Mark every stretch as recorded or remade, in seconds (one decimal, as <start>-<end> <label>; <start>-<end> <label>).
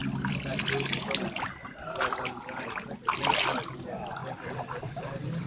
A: 0.0-5.5 recorded